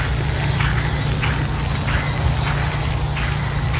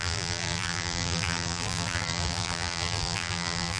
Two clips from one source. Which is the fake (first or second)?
second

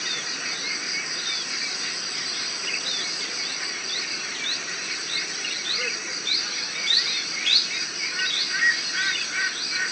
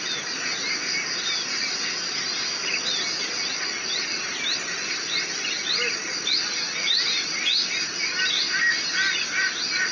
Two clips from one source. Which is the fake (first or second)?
first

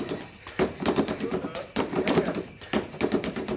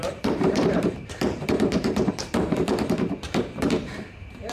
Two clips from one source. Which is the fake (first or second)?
second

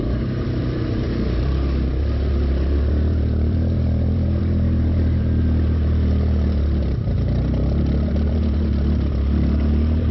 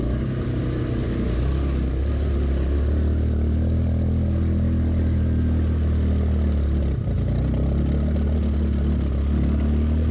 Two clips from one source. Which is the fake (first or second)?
first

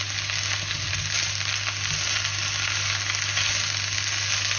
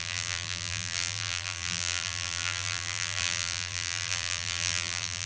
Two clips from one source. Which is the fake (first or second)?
second